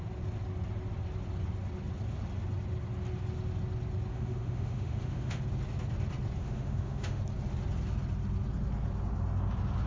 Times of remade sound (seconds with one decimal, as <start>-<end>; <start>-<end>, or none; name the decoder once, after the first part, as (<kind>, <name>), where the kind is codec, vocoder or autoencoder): 4.1-5.4 (autoencoder, DAC-VAE); 6.4-7.2